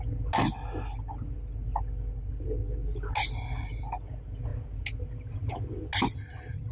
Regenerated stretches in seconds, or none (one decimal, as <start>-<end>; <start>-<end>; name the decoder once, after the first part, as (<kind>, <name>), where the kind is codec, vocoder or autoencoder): none